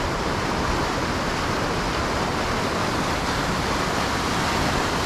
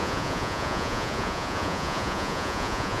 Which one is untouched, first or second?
first